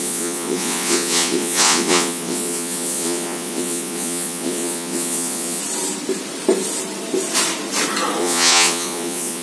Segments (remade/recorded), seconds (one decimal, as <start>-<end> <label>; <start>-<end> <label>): 0.0-5.6 remade; 5.6-8.2 recorded; 8.2-9.4 remade